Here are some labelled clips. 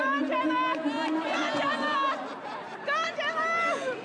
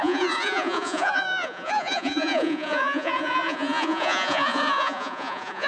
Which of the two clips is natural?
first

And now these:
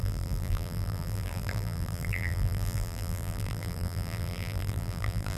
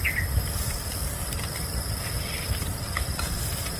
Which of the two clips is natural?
second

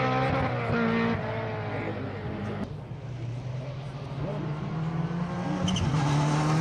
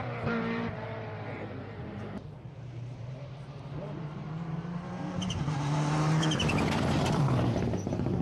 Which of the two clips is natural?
first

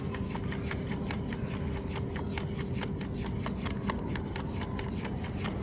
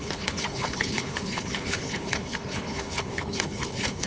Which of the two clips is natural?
first